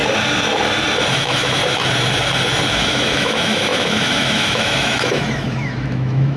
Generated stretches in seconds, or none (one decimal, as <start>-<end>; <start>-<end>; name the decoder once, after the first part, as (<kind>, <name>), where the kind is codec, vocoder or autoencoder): 1.1-1.6 (autoencoder, DAC-VAE); 2.7-6.4

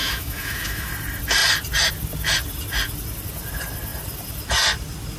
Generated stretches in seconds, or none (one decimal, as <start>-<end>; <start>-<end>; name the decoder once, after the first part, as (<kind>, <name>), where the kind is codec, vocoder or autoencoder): 0.0-0.9 (autoencoder, DAC-VAE)

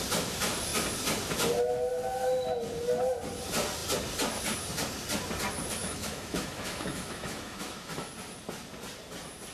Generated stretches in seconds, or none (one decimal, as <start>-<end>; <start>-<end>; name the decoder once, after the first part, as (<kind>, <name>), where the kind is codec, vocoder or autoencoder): 5.8-8.1 (autoencoder, DAC-VAE)

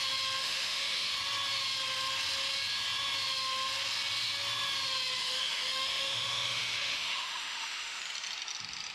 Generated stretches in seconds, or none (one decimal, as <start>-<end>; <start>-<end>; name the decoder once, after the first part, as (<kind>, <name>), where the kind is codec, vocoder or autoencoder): 0.4-1.1 (autoencoder, DAC-VAE); 5.2-8.0